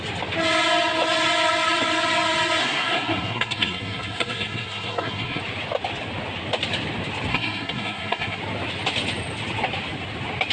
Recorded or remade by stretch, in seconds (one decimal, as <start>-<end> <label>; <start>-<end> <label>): 0.0-2.6 recorded; 2.6-5.4 remade; 5.4-7.3 recorded; 7.3-8.4 remade; 8.4-10.5 recorded